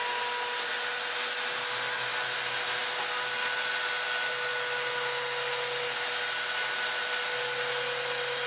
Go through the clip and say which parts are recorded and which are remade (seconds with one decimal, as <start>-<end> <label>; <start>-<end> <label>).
0.0-8.5 recorded